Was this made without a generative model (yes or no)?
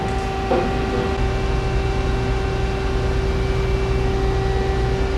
yes